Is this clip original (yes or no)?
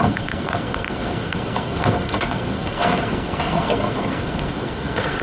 no